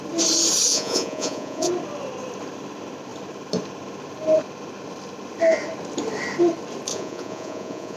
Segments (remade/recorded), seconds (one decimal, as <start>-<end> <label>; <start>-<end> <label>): 0.0-0.7 recorded; 0.7-1.7 remade; 1.7-6.9 recorded; 6.9-8.0 remade